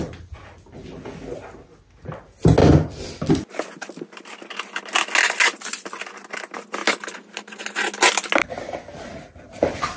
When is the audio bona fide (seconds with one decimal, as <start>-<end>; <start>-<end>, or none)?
0.0-10.0